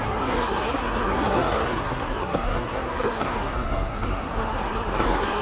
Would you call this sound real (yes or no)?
no